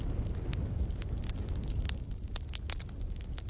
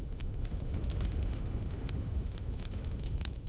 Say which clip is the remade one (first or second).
second